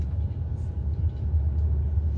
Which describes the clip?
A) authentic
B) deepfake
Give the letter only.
A